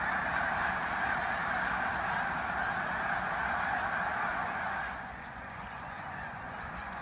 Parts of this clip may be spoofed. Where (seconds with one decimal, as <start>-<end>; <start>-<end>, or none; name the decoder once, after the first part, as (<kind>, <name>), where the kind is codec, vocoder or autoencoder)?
4.3-7.0 (vocoder, Vocos)